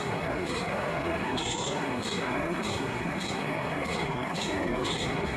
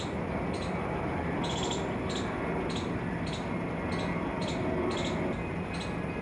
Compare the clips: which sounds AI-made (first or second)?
first